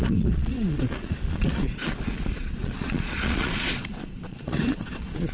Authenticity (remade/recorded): remade